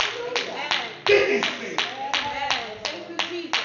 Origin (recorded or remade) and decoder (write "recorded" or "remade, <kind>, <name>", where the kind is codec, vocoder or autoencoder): recorded